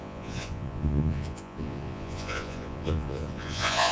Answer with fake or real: fake